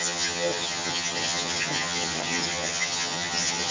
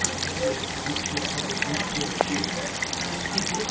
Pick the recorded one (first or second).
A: second